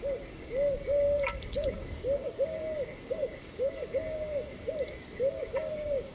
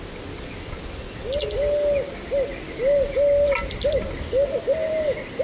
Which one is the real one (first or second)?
second